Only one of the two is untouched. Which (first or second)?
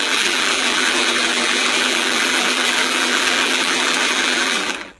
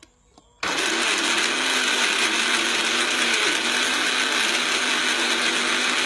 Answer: second